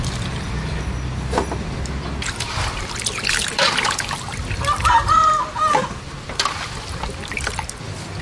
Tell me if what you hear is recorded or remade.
recorded